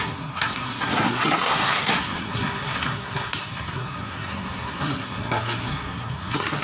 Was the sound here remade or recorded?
remade